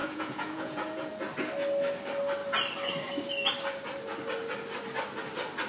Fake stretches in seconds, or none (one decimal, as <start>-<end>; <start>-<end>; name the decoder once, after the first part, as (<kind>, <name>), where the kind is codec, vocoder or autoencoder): 0.0-1.1 (vocoder, Vocos)